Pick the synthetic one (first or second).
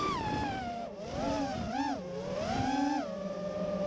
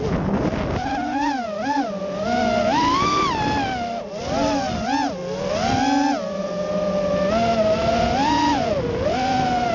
first